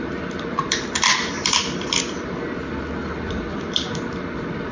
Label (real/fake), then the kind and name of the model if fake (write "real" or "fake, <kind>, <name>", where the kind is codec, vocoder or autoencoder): fake, vocoder, BigVGAN v2